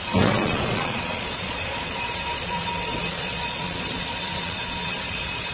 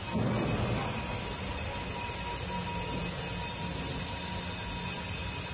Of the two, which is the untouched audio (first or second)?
second